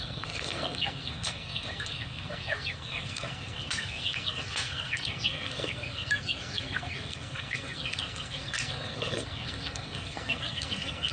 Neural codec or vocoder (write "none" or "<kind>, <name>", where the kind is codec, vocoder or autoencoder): codec, SNAC